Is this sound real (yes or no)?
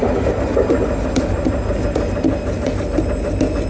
yes